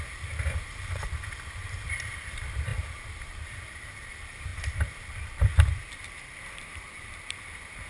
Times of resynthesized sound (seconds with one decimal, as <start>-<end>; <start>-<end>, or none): 0.0-4.5; 5.4-7.9